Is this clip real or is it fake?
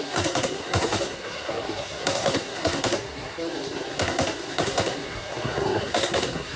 fake